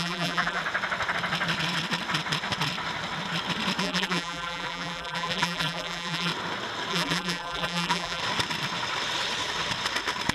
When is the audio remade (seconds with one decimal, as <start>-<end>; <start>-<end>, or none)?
0.0-0.6; 3.8-6.3; 6.9-8.2